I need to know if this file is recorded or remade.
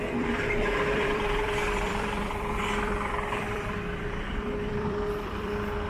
remade